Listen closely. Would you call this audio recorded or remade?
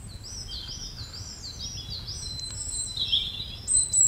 recorded